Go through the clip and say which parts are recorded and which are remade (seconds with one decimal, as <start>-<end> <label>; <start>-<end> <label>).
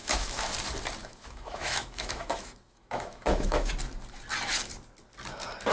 0.0-0.5 remade; 0.5-1.0 recorded; 1.0-3.7 remade; 3.7-5.7 recorded